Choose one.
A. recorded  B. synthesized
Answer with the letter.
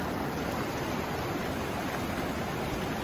A